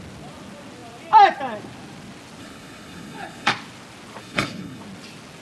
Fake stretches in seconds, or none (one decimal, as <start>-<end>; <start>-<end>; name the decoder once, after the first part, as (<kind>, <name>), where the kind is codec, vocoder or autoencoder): 2.4-3.5 (codec, HILCodec); 4.2-4.8